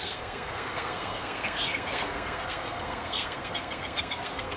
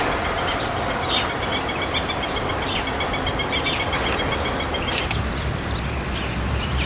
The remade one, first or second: first